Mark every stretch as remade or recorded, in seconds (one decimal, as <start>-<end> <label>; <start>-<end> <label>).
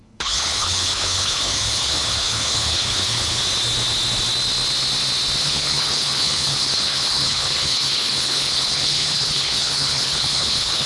0.0-3.4 remade; 3.4-5.4 recorded; 5.4-10.9 remade